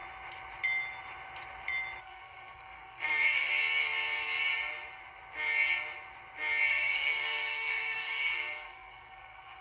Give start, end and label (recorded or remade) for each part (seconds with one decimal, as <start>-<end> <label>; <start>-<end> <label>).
0.0-2.0 recorded; 2.0-3.5 remade; 3.5-6.7 recorded; 6.7-9.6 remade